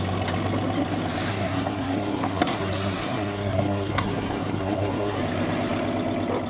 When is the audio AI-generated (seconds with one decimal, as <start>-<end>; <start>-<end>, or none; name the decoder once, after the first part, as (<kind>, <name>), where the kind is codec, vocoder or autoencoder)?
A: 1.3-5.2 (codec, SNAC)